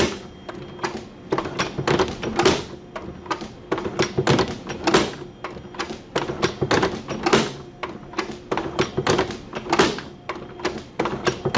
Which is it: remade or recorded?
recorded